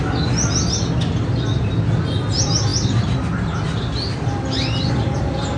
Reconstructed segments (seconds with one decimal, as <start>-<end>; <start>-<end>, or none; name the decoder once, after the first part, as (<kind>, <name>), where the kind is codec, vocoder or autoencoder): none